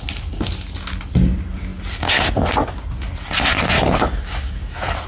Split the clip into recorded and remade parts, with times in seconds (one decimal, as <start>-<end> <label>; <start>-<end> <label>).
0.0-5.1 recorded